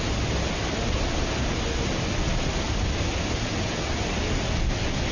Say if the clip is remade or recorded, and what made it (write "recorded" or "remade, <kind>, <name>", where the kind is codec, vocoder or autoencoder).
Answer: recorded